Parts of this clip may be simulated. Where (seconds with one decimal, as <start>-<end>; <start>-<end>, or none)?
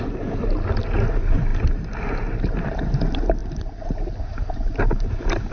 3.4-4.7